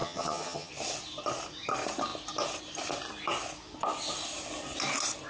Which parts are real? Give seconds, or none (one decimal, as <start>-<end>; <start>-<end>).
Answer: 0.7-5.3